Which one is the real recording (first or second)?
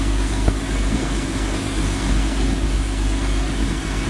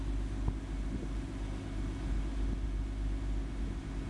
second